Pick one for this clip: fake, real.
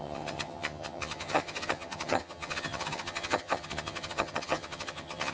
fake